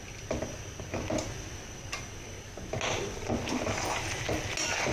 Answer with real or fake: real